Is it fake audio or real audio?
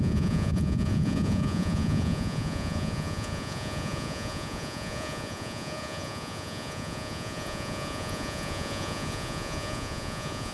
fake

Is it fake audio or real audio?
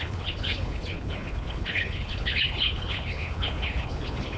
fake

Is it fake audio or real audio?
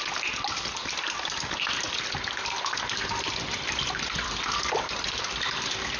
real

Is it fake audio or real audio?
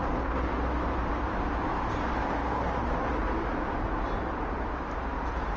real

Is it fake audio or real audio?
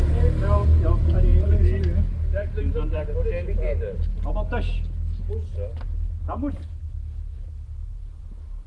real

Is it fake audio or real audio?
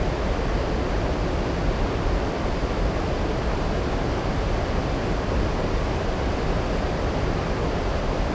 real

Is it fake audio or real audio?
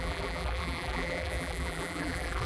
fake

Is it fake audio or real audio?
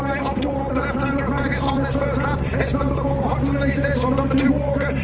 fake